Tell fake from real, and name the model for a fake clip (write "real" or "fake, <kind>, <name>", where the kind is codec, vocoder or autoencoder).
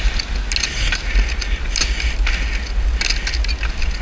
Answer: real